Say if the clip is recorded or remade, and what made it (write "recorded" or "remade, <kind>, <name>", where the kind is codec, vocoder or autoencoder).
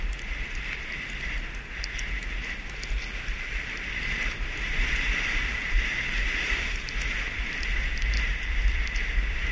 remade, vocoder, BigVGAN v2